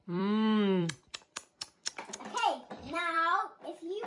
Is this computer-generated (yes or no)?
yes